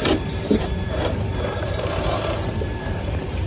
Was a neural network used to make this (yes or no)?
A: yes